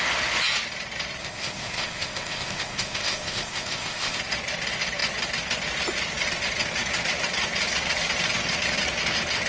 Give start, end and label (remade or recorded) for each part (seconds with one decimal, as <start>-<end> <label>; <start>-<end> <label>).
0.0-1.2 recorded; 1.2-4.2 remade; 4.2-9.5 recorded